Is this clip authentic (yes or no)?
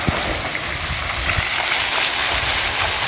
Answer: yes